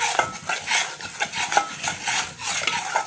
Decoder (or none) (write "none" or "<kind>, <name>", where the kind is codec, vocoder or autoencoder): none